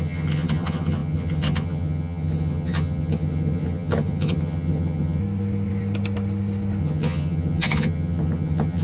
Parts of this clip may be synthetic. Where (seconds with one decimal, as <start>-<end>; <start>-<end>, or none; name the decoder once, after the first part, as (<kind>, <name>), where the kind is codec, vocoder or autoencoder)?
0.0-5.2 (vocoder, HiFi-GAN); 6.8-8.8